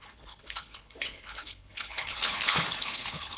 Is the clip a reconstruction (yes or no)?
yes